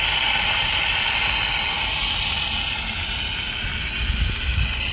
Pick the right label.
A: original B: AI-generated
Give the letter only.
A